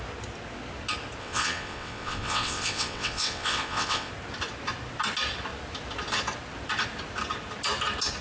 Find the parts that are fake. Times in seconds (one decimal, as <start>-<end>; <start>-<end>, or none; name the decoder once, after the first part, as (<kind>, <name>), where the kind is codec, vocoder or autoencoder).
1.2-4.1 (vocoder, WaveNeXt)